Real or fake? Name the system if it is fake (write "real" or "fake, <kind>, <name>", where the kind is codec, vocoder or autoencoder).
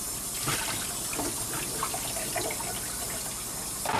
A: fake, vocoder, BigVGAN v2